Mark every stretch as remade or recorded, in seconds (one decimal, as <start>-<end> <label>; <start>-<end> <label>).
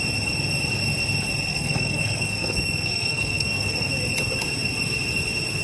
0.0-1.5 recorded; 1.5-3.9 remade; 3.9-5.6 recorded